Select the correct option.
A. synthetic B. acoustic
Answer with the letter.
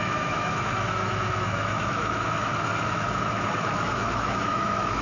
A